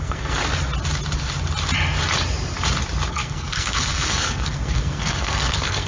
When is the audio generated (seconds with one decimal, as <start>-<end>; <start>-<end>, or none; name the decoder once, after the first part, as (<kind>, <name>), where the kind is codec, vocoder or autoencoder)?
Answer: 0.0-0.4 (codec, SNAC); 3.1-5.9